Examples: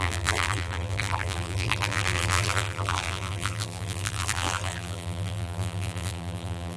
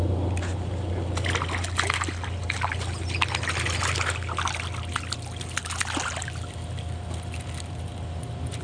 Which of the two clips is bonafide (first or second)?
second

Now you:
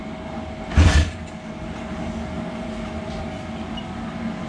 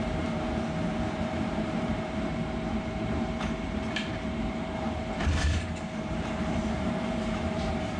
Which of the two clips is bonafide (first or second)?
first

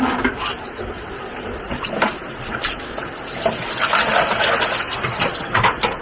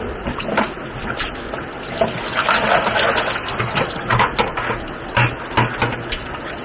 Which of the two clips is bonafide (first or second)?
second